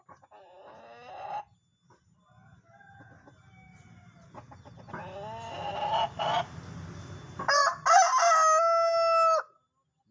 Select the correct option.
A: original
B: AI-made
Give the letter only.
A